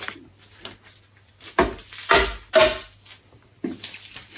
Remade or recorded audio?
recorded